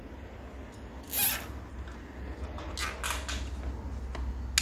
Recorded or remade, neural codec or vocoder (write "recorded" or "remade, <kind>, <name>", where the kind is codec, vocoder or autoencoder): recorded